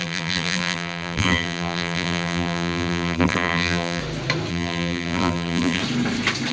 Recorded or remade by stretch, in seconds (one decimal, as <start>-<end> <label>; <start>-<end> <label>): 0.0-4.0 remade; 4.0-4.5 recorded; 4.5-5.8 remade; 5.8-6.5 recorded